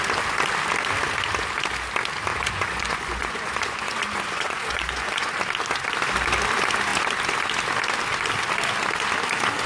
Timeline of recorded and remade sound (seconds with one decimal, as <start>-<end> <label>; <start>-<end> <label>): 0.0-2.3 recorded; 2.3-5.3 remade; 5.3-9.7 recorded